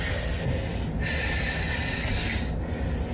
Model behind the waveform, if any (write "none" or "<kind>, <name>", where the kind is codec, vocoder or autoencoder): none